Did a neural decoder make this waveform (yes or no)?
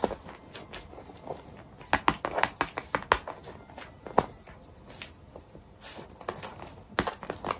no